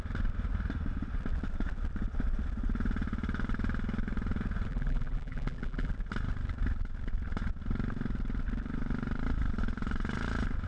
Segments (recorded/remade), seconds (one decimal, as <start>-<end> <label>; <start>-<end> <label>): 0.0-4.7 recorded; 4.7-5.9 remade; 5.9-10.7 recorded